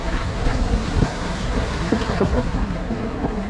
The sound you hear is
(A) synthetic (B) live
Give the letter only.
A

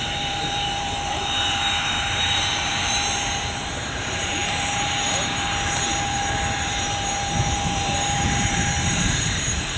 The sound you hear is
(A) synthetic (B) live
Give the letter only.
A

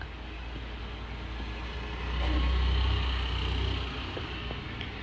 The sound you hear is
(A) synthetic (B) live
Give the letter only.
B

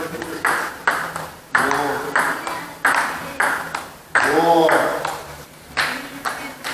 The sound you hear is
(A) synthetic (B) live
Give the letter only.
A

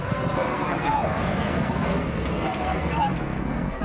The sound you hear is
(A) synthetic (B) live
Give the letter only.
A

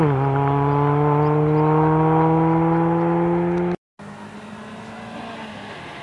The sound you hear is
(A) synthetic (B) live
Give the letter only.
B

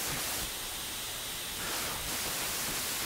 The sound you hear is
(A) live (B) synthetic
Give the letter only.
A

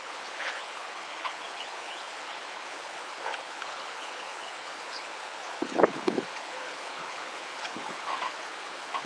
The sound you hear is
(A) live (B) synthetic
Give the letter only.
B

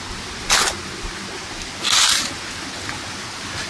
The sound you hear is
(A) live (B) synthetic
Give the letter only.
A